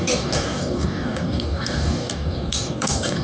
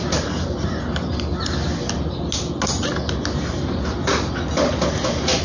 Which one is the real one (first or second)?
second